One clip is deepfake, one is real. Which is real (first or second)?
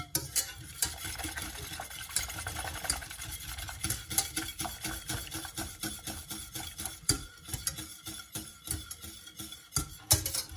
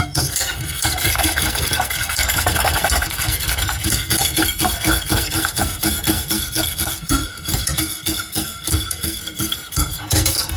first